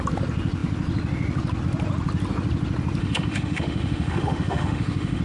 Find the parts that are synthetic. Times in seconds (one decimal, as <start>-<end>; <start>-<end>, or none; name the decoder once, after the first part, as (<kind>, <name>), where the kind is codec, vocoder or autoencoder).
3.0-5.2 (autoencoder, DAC-VAE)